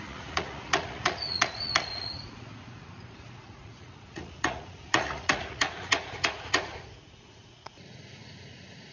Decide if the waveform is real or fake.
fake